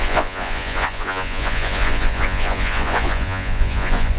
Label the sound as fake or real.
fake